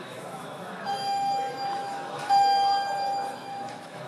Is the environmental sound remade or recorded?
remade